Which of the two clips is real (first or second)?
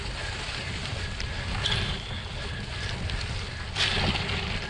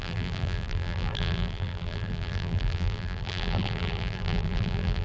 first